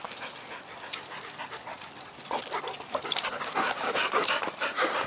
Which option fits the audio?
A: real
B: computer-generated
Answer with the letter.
A